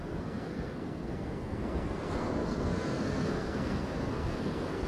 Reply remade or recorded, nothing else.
remade